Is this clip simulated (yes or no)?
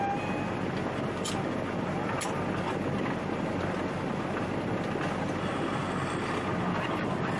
no